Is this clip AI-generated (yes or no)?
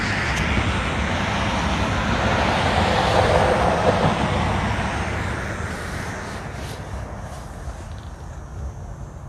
no